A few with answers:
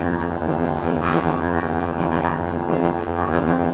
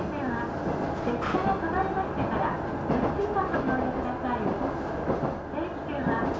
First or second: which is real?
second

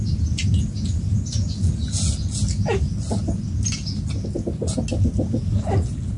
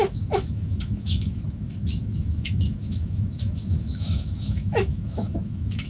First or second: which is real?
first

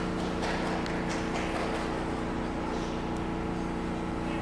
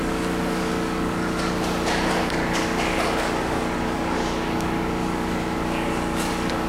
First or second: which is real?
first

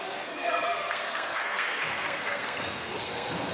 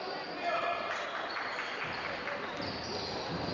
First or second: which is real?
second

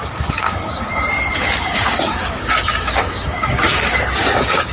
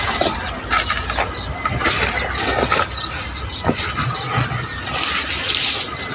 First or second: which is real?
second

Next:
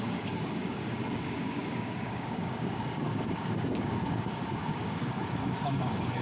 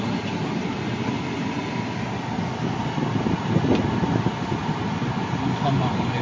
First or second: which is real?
second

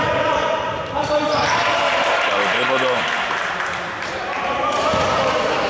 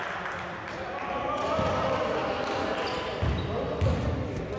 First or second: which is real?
second